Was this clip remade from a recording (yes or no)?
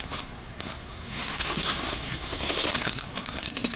yes